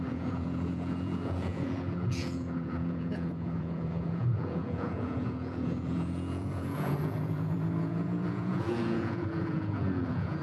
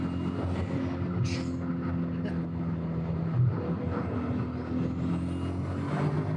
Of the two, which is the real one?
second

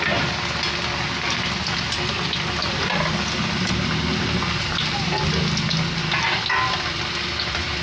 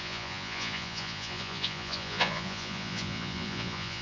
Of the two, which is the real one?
first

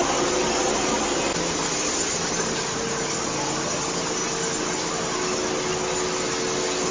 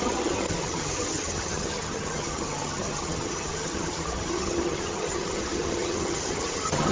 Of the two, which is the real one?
first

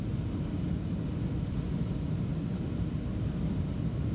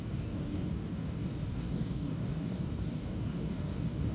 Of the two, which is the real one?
first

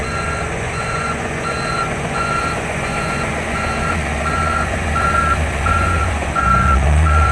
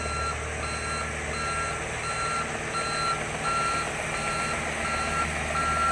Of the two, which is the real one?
second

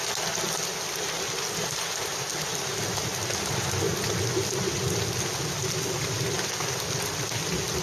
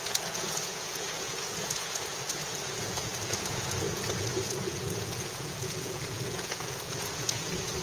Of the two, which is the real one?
first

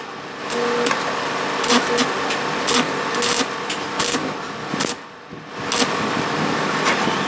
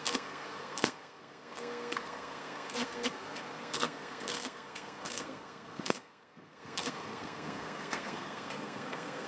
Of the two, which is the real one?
first